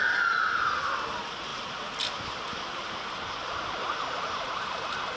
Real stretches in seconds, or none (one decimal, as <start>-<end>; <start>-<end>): 0.0-5.2